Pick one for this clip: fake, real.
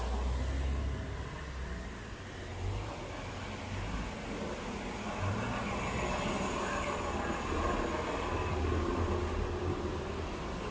real